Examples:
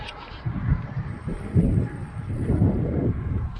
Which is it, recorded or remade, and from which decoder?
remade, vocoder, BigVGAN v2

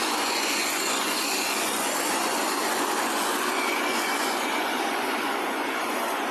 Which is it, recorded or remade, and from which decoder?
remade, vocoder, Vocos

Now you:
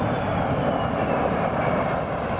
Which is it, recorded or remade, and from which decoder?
recorded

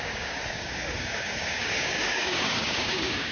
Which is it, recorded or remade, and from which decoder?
remade, codec, DAC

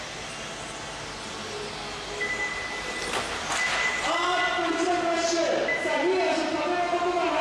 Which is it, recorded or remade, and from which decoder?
recorded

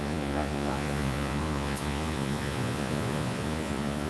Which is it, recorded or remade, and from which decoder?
remade, vocoder, Vocos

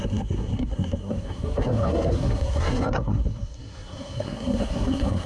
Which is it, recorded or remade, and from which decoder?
remade, codec, SNAC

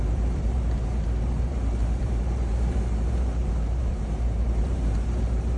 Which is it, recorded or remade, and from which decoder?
remade, vocoder, BigVGAN v2